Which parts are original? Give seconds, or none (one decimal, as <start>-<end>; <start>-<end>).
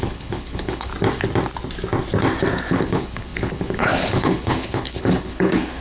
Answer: 0.9-2.7